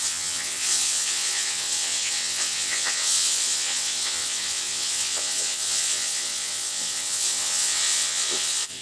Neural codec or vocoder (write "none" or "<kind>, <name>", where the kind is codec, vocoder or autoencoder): vocoder, WaveNeXt